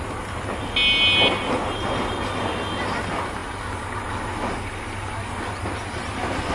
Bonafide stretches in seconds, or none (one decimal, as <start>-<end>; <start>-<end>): 0.0-6.5